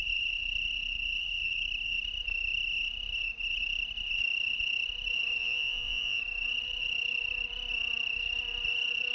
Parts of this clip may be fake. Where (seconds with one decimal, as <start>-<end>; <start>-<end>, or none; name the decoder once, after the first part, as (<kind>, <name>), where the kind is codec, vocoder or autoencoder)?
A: 5.4-6.2 (vocoder, Vocos)